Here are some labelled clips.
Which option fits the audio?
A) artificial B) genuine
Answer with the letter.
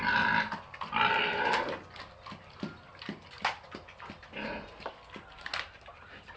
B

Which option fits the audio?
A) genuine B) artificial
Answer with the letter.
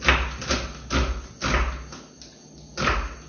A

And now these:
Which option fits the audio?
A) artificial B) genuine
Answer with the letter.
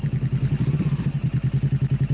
B